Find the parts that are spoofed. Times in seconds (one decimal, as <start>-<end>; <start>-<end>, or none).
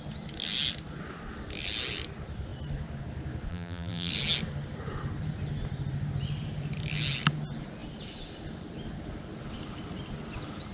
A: 3.5-4.1